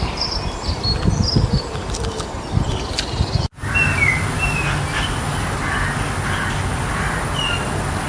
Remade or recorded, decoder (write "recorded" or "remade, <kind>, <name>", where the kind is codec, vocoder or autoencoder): recorded